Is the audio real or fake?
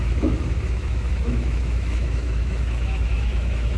fake